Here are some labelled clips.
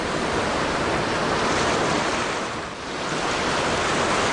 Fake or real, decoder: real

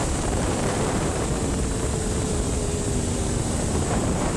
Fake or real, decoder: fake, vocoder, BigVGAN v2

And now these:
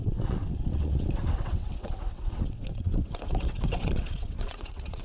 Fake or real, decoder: fake, vocoder, WaveNeXt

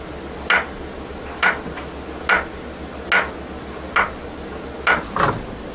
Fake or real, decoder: real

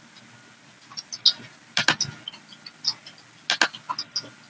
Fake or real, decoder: real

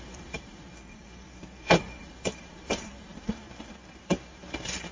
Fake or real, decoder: fake, vocoder, BigVGAN v2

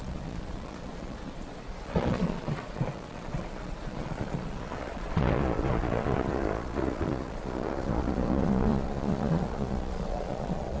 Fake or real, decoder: fake, vocoder, Vocos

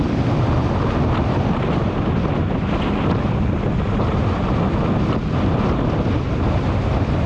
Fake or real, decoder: real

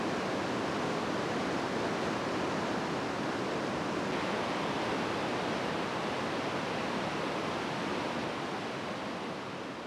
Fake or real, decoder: real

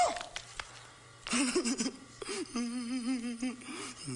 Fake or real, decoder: real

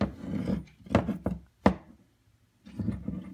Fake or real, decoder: real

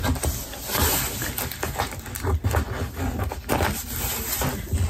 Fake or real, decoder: real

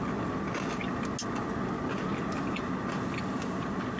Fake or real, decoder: real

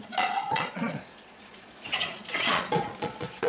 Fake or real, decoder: fake, vocoder, Vocos